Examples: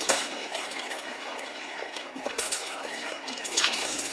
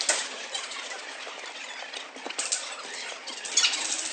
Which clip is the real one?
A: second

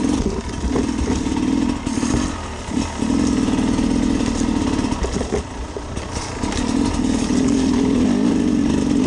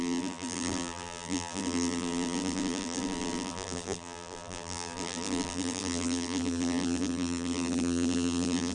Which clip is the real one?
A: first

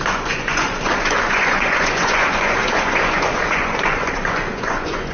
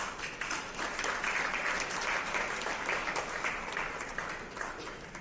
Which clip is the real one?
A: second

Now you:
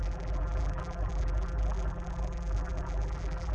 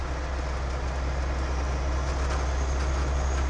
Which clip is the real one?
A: second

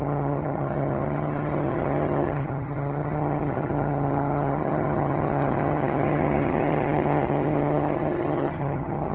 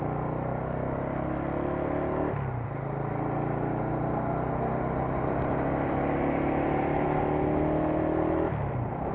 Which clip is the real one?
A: second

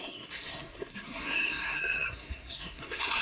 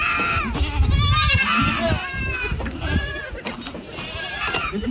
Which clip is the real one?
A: second